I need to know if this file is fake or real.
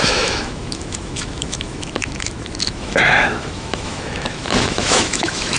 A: fake